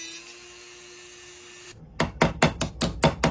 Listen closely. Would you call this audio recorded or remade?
recorded